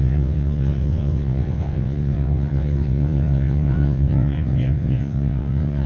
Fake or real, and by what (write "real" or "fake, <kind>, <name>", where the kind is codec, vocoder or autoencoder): fake, vocoder, WaveNeXt